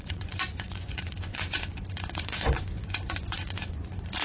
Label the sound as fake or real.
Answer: fake